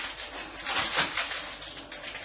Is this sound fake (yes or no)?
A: no